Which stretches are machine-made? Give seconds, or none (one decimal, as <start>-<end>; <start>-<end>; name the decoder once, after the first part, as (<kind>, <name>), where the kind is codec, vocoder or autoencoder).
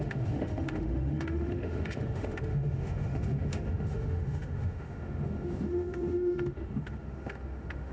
0.0-7.9 (autoencoder, DAC-VAE)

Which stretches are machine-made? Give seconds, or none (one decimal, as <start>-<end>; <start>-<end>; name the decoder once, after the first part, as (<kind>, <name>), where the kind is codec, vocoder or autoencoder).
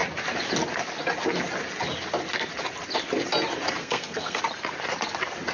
3.8-4.4 (codec, SNAC)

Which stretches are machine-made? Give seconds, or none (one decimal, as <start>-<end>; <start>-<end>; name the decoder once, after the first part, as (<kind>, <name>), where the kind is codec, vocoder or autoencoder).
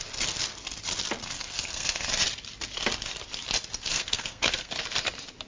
1.2-2.1 (codec, SNAC); 3.9-4.7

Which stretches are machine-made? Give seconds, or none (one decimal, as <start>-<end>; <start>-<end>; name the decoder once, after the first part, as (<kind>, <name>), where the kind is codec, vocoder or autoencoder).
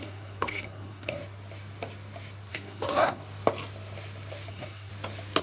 0.0-1.2 (codec, SNAC); 2.5-3.2; 4.5-4.9